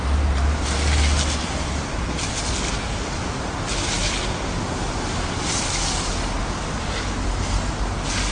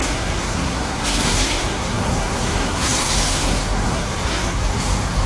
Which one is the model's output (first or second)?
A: second